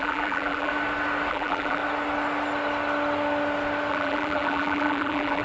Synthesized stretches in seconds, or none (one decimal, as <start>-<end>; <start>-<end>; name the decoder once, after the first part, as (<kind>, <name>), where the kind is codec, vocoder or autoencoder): 0.0-0.7 (vocoder, BigVGAN v2); 1.3-1.8; 3.9-5.4